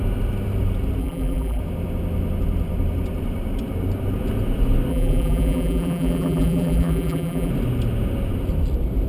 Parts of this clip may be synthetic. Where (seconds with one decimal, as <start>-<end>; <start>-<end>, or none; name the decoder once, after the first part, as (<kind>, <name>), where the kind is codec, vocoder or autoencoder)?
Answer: 1.0-1.6 (vocoder, BigVGAN v2); 4.9-7.5